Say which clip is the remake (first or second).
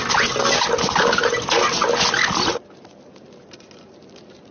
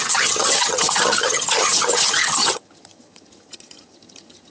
second